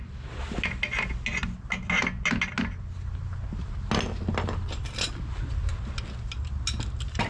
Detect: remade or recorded recorded